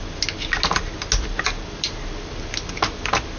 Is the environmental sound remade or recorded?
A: recorded